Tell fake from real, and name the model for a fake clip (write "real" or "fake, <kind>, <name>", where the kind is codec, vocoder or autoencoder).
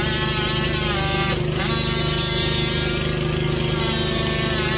real